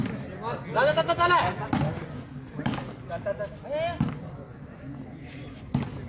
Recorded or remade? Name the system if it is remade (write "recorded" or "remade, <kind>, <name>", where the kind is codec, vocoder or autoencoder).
recorded